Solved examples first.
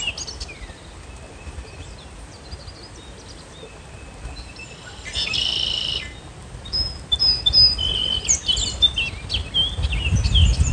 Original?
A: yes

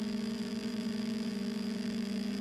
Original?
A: no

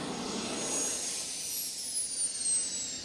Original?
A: yes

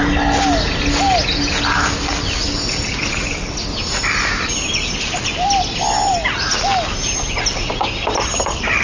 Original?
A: yes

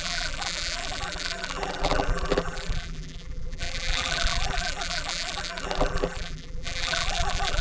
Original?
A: no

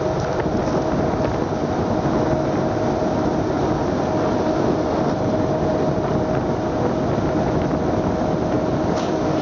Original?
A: yes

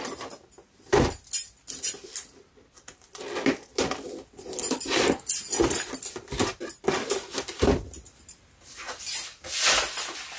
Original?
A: yes